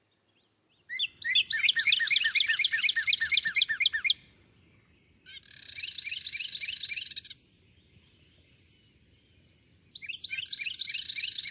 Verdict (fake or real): real